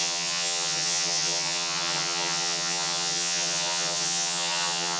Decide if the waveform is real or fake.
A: fake